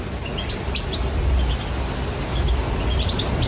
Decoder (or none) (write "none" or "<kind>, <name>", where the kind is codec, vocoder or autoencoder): none